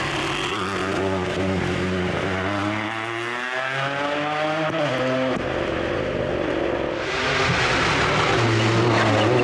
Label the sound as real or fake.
real